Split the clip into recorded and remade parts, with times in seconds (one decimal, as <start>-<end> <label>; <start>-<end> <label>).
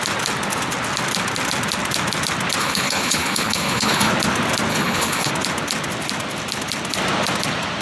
0.0-2.6 recorded; 2.6-4.1 remade; 4.1-4.7 recorded; 4.7-5.3 remade; 5.3-7.8 recorded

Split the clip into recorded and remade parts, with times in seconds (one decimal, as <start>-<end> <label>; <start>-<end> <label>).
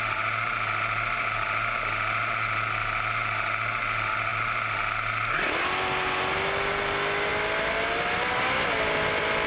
0.0-9.5 recorded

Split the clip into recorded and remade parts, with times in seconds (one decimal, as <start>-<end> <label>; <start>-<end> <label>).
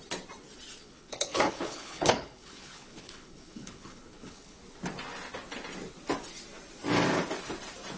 0.0-0.8 recorded; 0.8-4.6 remade; 4.6-8.0 recorded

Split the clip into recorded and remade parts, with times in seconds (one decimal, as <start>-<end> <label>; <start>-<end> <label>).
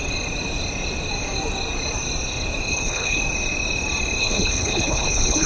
0.0-2.7 recorded; 2.7-3.2 remade; 3.2-4.2 recorded; 4.2-5.5 remade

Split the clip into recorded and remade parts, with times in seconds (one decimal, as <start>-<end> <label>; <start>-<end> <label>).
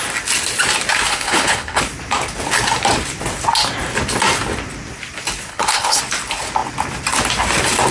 0.0-1.1 recorded; 1.1-1.8 remade; 1.8-5.5 recorded; 5.5-6.0 remade; 6.0-7.9 recorded